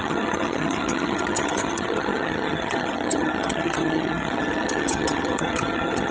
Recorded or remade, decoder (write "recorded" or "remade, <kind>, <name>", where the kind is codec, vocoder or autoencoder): remade, vocoder, HiFi-GAN